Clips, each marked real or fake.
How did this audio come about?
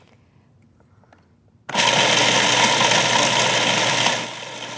real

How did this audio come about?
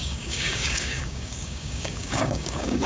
fake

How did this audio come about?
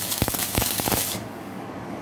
fake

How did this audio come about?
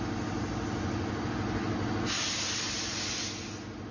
real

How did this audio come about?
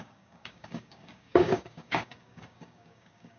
fake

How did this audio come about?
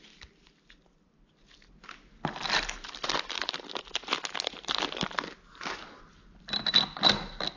real